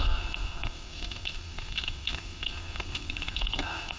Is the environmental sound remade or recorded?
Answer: remade